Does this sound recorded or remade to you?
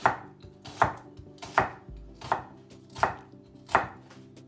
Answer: recorded